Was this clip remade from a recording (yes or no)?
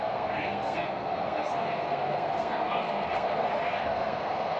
yes